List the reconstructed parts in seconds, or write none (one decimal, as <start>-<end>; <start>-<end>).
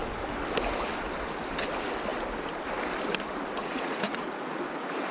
3.6-4.6